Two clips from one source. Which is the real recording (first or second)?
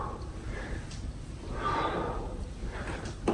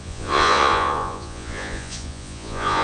first